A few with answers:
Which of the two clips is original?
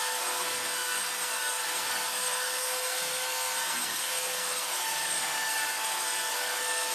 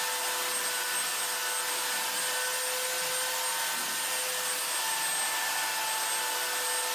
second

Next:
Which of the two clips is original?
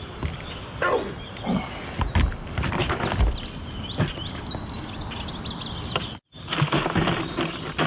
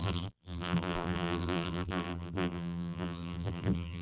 first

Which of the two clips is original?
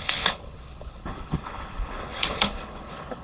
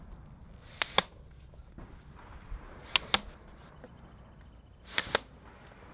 second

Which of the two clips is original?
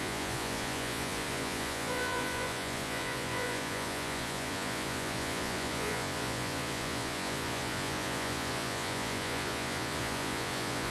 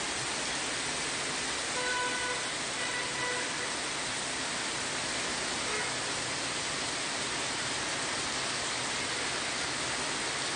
second